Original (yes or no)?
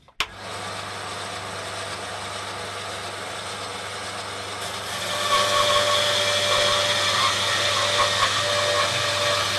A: yes